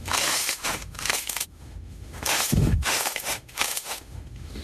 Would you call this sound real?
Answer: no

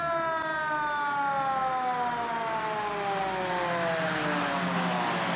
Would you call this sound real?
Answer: yes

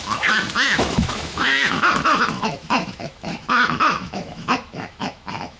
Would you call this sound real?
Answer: no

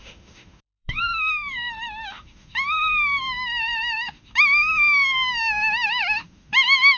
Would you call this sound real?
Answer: no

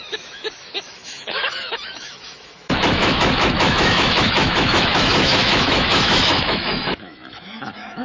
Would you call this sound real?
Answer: no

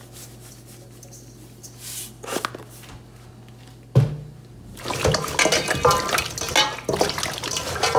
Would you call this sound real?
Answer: yes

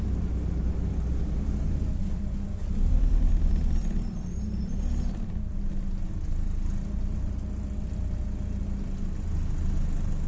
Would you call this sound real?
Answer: yes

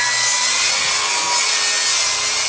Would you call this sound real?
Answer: yes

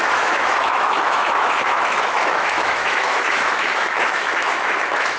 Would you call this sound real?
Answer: no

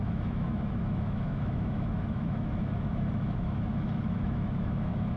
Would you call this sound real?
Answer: no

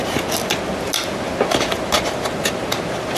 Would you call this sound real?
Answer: yes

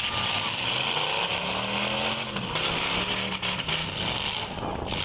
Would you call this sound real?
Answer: yes